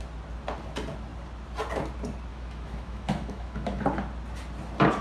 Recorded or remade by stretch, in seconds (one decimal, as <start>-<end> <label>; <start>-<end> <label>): 0.0-2.3 recorded; 2.3-3.8 remade; 3.8-5.0 recorded

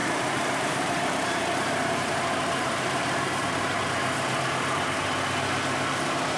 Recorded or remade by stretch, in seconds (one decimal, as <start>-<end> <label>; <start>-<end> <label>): 0.0-3.8 remade; 3.8-6.4 recorded

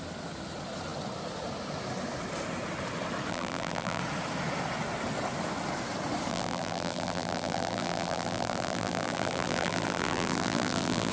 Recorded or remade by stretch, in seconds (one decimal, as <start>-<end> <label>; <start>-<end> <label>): 0.0-3.3 recorded; 3.3-4.0 remade; 4.0-6.3 recorded; 6.3-11.1 remade